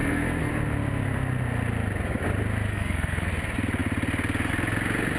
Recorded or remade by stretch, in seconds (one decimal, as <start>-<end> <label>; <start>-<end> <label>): 0.0-0.5 remade; 0.5-2.7 recorded; 2.7-3.3 remade; 3.3-5.2 recorded

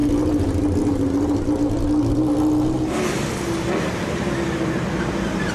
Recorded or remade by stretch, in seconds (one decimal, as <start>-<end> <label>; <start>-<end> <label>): 0.0-5.5 recorded

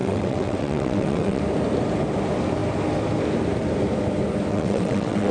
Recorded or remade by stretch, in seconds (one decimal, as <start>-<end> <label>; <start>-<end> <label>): 0.0-1.4 remade; 1.4-4.5 recorded; 4.5-5.3 remade

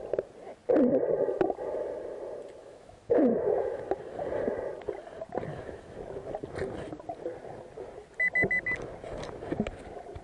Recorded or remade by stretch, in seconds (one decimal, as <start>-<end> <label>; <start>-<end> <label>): 0.0-2.6 recorded; 2.6-3.8 remade; 3.8-5.5 recorded; 5.5-6.0 remade; 6.0-10.2 recorded

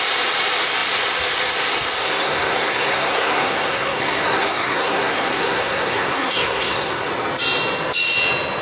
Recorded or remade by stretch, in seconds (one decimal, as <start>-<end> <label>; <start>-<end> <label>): 0.0-2.0 recorded; 2.0-7.1 remade; 7.1-8.6 recorded

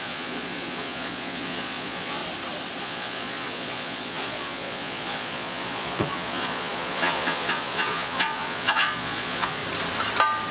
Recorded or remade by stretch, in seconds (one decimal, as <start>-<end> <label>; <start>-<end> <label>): 0.0-2.2 remade; 2.2-2.8 recorded; 2.8-9.6 remade; 9.6-10.5 recorded

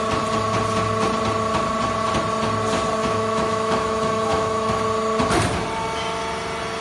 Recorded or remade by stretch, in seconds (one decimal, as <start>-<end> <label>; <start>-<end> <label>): 0.0-3.0 recorded; 3.0-4.7 remade; 4.7-6.8 recorded

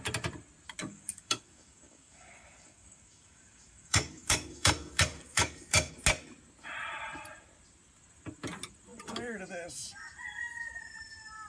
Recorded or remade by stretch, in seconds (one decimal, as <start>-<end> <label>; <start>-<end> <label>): 0.0-0.8 recorded; 0.8-5.9 remade; 5.9-11.5 recorded